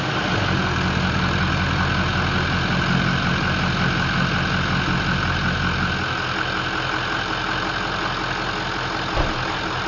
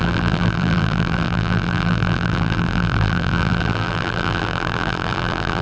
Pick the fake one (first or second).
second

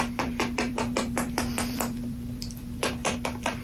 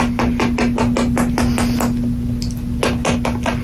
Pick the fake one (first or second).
first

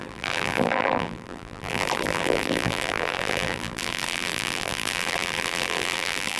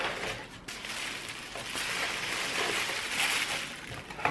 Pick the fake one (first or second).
first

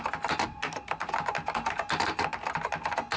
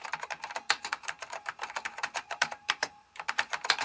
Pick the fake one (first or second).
second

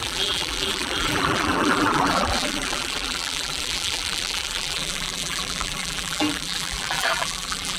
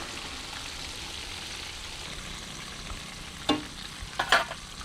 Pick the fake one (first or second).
first